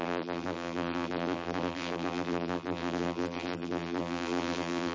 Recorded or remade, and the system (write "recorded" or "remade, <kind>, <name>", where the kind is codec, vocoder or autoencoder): remade, vocoder, BigVGAN v2